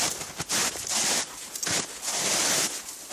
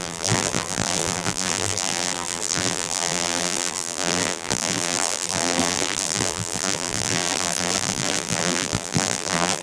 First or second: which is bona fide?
first